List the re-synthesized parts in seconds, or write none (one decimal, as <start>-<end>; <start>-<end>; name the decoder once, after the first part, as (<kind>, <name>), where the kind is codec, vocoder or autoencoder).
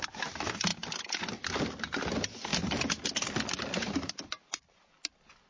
none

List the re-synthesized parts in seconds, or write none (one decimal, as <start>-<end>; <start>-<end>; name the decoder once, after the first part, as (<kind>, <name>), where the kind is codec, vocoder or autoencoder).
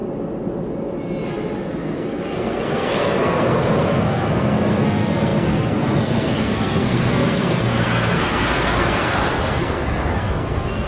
1.7-10.9 (codec, SNAC)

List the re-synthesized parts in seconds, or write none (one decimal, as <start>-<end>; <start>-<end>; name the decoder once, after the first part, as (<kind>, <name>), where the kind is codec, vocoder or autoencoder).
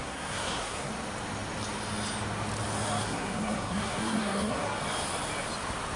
0.0-0.9 (codec, SNAC); 3.0-4.8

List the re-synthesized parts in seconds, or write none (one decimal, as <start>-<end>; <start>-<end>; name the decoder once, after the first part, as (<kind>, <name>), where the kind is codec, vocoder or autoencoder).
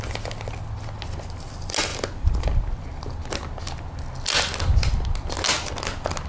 none